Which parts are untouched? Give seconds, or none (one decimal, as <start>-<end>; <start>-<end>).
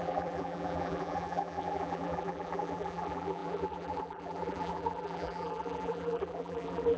none